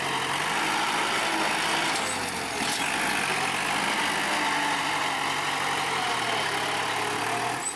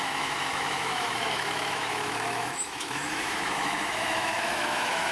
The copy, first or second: second